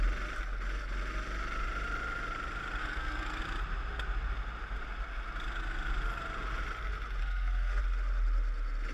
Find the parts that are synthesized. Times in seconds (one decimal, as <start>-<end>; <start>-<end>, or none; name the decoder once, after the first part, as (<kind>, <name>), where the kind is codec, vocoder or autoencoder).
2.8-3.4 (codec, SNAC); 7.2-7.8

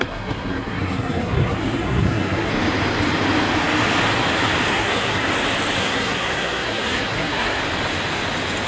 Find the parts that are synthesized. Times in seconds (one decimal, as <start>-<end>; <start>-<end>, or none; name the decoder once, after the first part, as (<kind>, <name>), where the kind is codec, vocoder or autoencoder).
0.0-2.5 (codec, SNAC); 4.7-5.3; 5.8-7.6

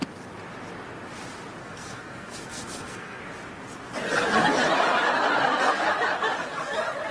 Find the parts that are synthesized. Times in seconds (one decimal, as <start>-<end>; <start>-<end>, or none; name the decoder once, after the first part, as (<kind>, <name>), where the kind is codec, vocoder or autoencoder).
1.6-3.2 (codec, SNAC); 5.5-6.0